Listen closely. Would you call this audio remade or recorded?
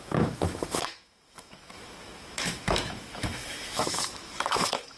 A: remade